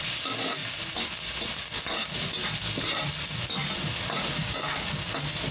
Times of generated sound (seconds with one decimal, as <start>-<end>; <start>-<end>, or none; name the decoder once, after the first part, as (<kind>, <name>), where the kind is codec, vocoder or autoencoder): 4.4-5.0 (codec, DAC)